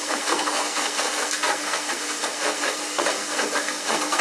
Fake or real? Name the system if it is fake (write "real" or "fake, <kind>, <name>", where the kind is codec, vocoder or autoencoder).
fake, codec, SNAC